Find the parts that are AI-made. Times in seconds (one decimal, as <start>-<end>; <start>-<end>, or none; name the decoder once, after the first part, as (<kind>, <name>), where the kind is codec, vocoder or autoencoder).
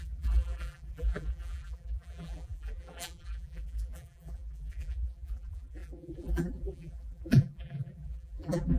0.0-8.8 (vocoder, BigVGAN v2)